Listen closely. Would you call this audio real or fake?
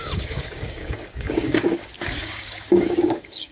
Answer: fake